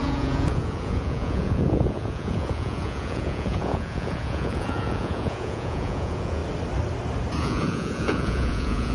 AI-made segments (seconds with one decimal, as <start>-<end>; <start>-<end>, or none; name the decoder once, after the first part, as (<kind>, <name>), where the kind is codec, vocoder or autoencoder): 0.0-6.4 (vocoder, Vocos); 7.4-8.9